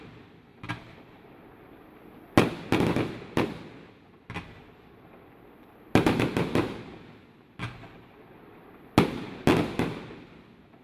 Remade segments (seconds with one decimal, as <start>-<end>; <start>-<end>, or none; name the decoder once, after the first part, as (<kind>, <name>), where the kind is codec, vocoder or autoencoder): 0.5-1.3 (vocoder, BigVGAN v2)

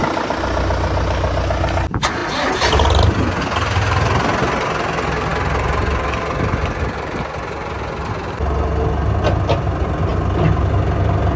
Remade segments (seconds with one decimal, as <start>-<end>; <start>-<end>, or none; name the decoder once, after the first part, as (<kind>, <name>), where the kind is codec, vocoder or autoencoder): none

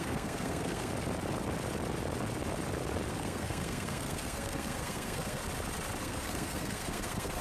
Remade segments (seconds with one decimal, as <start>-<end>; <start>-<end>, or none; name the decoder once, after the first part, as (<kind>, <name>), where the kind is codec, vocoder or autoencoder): 0.0-0.9 (codec, SNAC); 3.1-5.4; 6.0-7.4

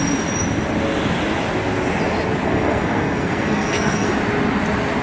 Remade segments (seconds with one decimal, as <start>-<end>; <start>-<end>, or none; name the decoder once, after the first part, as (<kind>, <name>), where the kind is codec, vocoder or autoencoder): 2.5-4.1 (codec, SNAC)

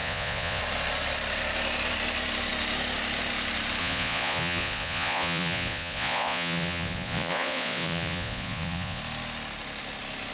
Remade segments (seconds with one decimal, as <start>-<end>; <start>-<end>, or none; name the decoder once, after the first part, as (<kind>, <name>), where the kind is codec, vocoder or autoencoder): 0.0-0.6 (vocoder, Vocos); 3.8-9.0

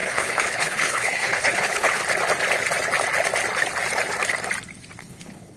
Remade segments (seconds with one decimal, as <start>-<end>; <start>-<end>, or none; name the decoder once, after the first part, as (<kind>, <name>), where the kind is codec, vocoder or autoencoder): 0.0-2.0 (codec, HILCodec); 5.0-5.6